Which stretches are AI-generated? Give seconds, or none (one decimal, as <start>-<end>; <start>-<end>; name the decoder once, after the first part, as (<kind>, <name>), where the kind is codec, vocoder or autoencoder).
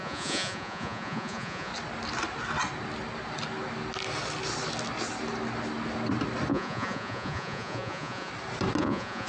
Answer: 0.0-1.7 (vocoder, Vocos); 6.5-8.3; 8.8-9.3